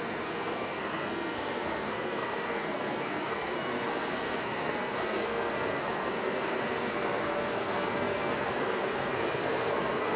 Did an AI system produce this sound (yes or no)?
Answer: yes